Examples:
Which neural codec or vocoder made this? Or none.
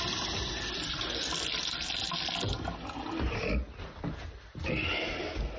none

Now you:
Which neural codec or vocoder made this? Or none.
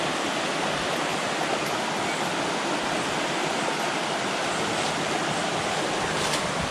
none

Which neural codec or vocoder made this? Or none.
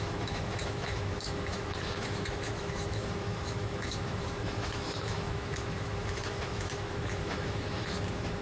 autoencoder, DAC-VAE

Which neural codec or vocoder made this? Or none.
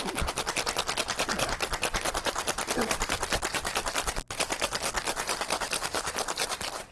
none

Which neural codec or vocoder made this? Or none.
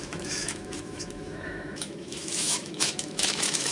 autoencoder, DAC-VAE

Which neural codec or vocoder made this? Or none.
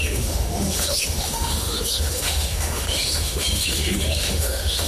autoencoder, DAC-VAE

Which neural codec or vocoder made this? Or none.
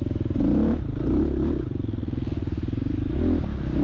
none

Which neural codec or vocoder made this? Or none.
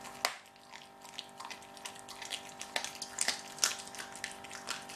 none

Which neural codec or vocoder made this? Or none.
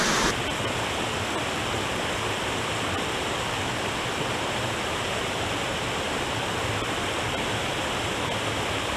none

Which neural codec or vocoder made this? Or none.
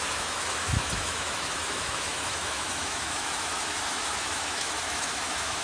autoencoder, DAC-VAE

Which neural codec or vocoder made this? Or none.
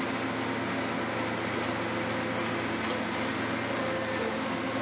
none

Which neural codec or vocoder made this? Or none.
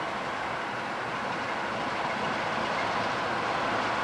none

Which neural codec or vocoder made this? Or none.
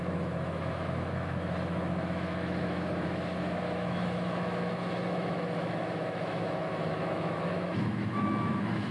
autoencoder, DAC-VAE